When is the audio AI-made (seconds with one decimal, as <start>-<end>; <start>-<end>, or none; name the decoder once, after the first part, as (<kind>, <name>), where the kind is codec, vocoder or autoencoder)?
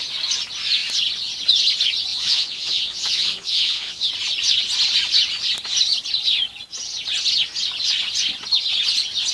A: 2.1-4.1 (vocoder, Vocos)